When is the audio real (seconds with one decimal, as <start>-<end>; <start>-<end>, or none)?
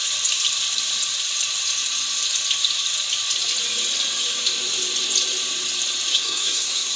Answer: 0.0-6.1